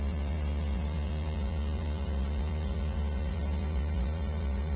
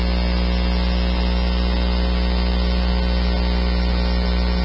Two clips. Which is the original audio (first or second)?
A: second